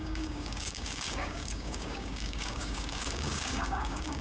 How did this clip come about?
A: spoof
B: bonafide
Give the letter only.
A